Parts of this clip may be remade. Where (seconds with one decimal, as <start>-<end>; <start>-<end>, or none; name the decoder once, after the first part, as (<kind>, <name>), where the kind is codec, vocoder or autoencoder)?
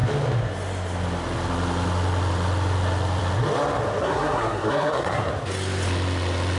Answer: 4.0-5.3 (codec, SNAC)